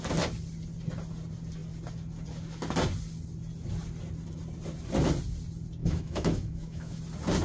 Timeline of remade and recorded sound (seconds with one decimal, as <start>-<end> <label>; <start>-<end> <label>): 0.0-5.8 recorded; 5.8-7.0 remade; 7.0-7.4 recorded